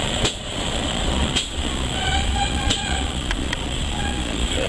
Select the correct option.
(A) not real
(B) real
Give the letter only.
A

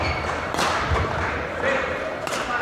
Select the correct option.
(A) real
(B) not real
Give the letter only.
B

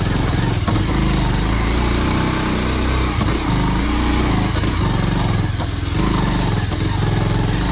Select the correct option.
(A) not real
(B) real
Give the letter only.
B